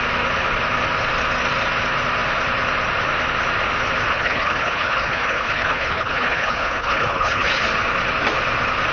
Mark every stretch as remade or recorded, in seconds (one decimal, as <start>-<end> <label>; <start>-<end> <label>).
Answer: 0.0-4.1 recorded; 4.1-7.6 remade; 7.6-8.9 recorded